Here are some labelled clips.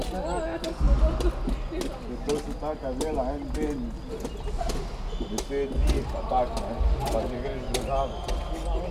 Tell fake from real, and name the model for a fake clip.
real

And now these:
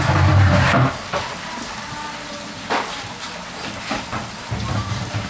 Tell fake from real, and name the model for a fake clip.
real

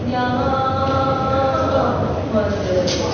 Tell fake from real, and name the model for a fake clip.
real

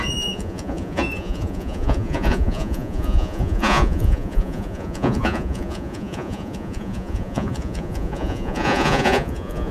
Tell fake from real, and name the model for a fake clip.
fake, vocoder, Vocos